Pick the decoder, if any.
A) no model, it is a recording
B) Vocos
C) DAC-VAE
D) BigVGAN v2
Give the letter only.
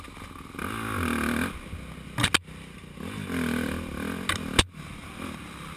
A